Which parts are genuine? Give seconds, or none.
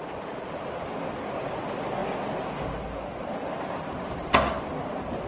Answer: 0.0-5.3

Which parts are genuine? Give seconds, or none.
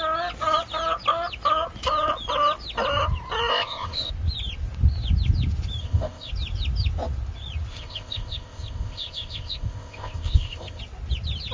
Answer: 0.0-3.5; 4.1-5.8; 6.3-7.7; 10.8-11.5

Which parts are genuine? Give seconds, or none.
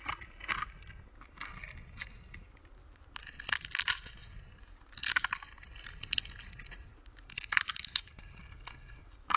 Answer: 0.0-9.4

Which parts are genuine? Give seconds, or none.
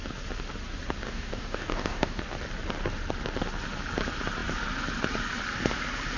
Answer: 0.0-1.0; 2.2-6.2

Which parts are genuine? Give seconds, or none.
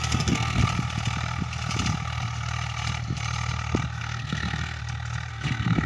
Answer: 0.6-4.0; 4.8-5.3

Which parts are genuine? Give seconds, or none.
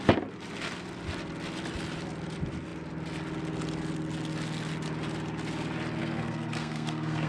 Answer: 0.0-6.0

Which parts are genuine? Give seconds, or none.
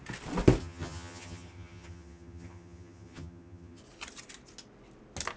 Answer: 0.0-0.6; 3.8-5.4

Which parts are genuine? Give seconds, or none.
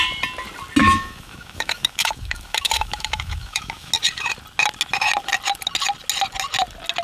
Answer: 0.0-0.8; 3.9-7.0